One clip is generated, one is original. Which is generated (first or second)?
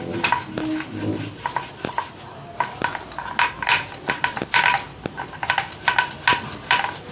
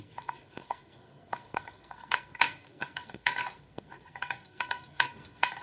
second